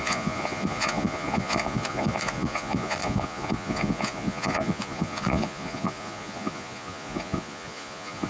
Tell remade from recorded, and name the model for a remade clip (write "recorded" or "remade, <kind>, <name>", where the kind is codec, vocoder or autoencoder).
remade, vocoder, Vocos